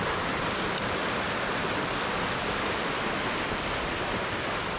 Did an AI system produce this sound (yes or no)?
no